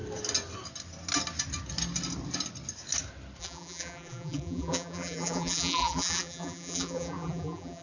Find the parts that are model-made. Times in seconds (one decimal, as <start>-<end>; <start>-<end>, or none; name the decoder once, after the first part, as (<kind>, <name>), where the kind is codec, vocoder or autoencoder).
3.4-7.8 (vocoder, BigVGAN v2)